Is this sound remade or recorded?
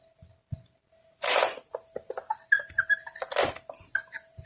recorded